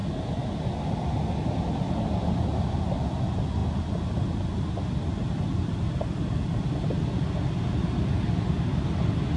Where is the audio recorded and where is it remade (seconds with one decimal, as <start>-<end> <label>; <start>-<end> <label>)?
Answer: 0.0-9.4 recorded